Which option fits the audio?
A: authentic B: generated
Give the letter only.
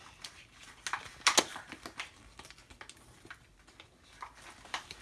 A